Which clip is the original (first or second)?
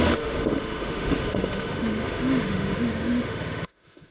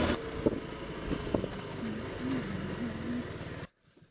second